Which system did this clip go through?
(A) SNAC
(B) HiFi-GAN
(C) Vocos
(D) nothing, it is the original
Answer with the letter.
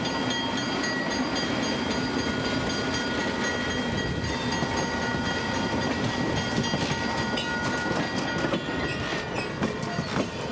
D